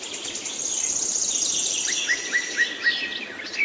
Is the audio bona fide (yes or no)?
yes